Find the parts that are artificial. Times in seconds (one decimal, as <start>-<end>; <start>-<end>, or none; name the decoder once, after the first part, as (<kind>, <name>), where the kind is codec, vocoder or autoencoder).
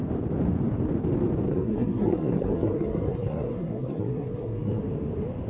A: 1.5-4.8 (codec, SNAC)